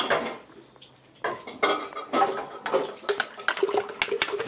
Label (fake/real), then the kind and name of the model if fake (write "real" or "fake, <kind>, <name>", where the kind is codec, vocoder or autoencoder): real